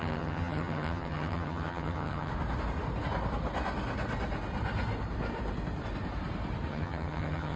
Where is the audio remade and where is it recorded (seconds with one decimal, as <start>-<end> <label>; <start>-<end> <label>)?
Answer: 0.0-2.3 remade; 2.3-6.7 recorded; 6.7-7.6 remade

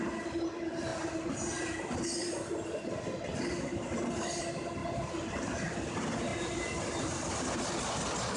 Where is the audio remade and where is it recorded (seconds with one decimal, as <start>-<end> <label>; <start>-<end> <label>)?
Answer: 0.0-8.4 recorded

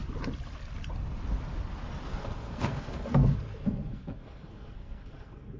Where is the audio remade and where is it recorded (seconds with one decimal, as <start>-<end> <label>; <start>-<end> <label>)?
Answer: 0.0-2.1 recorded; 2.1-5.6 remade